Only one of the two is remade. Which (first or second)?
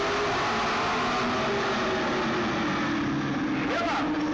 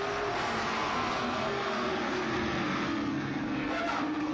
second